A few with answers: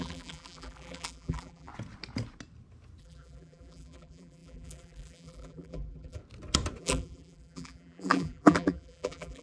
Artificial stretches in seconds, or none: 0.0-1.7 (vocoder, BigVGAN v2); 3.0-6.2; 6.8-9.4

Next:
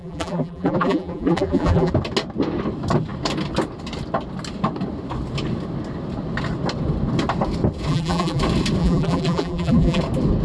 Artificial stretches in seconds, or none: 0.0-1.9 (vocoder, BigVGAN v2); 7.9-8.4; 8.8-10.0

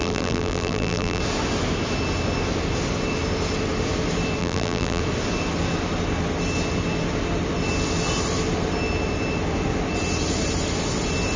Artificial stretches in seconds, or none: 0.0-1.2 (vocoder, BigVGAN v2); 4.4-5.0